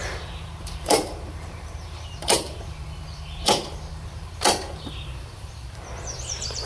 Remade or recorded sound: remade